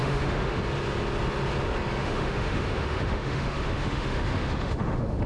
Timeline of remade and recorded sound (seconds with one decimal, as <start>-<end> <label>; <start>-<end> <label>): 0.0-0.6 remade; 0.6-2.0 recorded; 2.0-5.3 remade